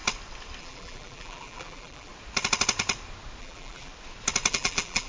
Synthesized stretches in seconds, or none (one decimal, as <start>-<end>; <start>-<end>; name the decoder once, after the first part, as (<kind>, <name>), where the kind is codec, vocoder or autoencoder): 0.6-2.1 (vocoder, BigVGAN v2); 3.4-3.9; 4.5-5.1